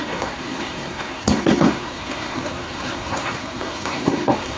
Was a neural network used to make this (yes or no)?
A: yes